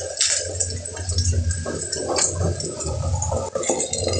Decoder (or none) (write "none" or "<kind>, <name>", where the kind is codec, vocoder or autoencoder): none